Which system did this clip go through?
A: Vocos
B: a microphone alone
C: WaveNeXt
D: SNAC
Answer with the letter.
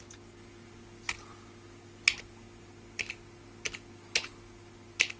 B